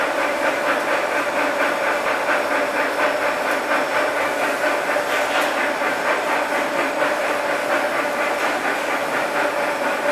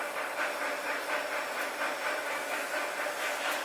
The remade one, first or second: second